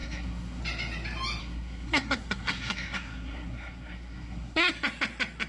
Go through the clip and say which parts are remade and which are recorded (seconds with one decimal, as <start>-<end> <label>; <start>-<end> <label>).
0.0-0.6 remade; 0.6-1.4 recorded; 1.4-4.7 remade; 4.7-5.5 recorded

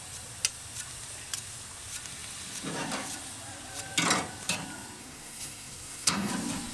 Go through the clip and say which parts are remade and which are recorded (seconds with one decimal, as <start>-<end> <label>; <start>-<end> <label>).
0.0-5.0 recorded; 5.0-6.3 remade; 6.3-6.7 recorded

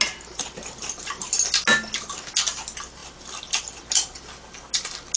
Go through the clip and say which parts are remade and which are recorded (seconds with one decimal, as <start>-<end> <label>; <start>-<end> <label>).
0.0-5.2 recorded

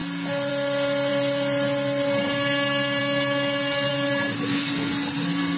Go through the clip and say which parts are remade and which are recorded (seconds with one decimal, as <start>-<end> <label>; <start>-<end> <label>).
0.0-5.6 recorded

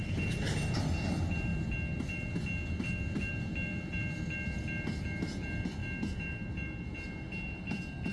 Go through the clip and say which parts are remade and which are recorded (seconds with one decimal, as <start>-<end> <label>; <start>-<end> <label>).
0.0-8.1 recorded